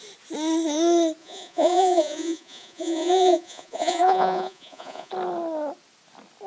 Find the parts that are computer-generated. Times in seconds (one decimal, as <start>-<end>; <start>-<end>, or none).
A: 1.2-5.1